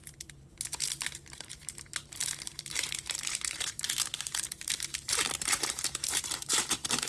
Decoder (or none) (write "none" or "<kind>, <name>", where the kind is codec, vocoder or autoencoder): vocoder, BigVGAN v2